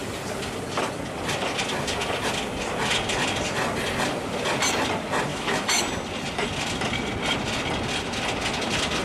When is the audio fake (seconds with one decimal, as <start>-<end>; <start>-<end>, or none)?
5.3-5.8